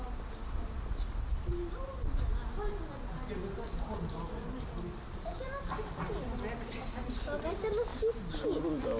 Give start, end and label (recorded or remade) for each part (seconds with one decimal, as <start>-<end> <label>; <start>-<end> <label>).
0.0-9.0 recorded